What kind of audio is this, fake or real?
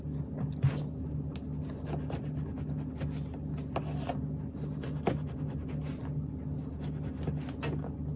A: real